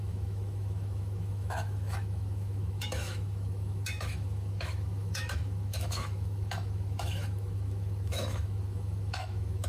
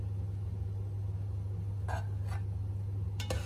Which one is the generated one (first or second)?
first